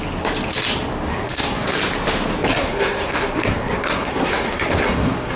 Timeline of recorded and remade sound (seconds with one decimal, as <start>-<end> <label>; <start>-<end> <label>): 0.0-1.1 recorded; 1.1-1.8 remade; 1.8-2.6 recorded; 2.6-5.4 remade